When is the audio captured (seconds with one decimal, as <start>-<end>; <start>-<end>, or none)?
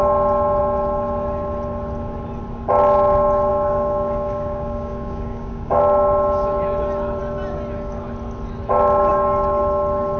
0.0-3.5; 5.8-10.2